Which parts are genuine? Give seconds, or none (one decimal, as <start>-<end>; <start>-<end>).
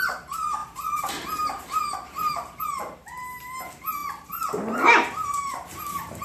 0.0-0.6; 2.6-6.2